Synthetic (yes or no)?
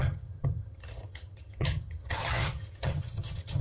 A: yes